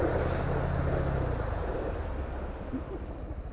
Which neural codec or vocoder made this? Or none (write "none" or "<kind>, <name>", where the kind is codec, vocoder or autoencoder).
none